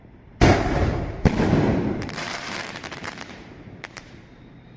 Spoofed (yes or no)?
yes